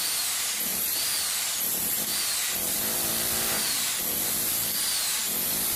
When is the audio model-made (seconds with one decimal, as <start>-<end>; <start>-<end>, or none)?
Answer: 0.0-5.8